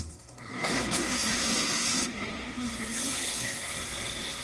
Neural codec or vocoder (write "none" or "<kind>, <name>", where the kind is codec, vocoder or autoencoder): codec, SNAC